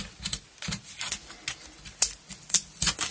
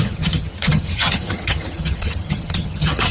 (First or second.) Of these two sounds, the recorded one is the first